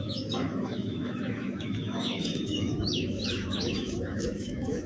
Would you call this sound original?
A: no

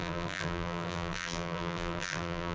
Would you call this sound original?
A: no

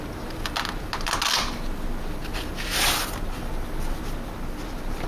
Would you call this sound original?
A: yes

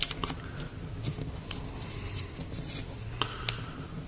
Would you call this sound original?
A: yes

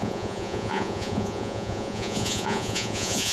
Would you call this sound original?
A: no